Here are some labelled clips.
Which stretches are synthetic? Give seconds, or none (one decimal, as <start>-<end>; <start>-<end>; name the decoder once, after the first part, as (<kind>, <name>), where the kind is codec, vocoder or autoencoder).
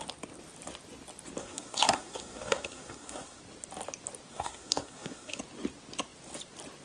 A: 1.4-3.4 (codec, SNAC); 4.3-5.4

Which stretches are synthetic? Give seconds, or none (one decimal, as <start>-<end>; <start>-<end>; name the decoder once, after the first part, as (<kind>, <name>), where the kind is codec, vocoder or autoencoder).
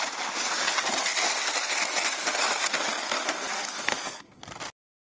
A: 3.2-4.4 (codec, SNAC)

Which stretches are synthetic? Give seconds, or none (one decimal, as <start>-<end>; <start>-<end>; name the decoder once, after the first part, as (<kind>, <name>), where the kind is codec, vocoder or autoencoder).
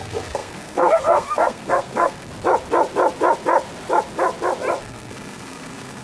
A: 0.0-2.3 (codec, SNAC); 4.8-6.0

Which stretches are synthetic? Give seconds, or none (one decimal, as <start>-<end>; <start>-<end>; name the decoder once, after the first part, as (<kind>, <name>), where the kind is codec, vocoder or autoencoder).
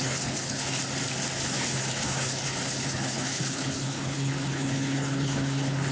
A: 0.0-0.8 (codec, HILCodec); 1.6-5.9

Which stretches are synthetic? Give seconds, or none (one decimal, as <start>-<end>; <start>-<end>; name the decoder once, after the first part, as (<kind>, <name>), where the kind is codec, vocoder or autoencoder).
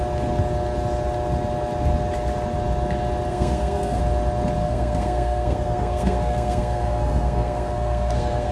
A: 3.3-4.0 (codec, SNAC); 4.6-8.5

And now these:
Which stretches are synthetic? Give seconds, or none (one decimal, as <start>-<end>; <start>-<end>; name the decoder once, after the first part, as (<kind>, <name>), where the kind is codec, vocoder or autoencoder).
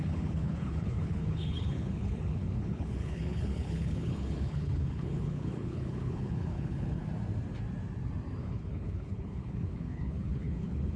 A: 0.0-7.0 (codec, HILCodec); 8.4-11.0